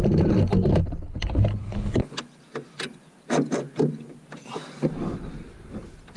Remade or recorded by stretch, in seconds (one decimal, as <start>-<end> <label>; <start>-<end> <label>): 0.0-1.6 recorded; 1.6-2.2 remade; 2.2-6.2 recorded